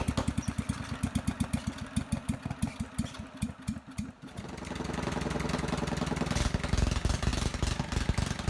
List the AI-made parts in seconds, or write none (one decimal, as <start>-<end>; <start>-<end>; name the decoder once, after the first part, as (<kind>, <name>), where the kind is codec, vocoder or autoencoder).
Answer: none